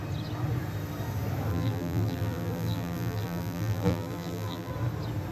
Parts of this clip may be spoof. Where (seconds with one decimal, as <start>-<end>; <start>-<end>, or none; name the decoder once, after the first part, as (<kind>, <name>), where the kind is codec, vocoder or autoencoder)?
1.5-4.7 (vocoder, BigVGAN v2)